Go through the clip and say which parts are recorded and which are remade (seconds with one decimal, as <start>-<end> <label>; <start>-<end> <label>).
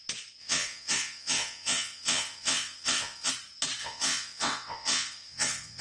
0.0-0.4 recorded; 0.4-3.3 remade; 3.3-3.8 recorded; 3.8-5.8 remade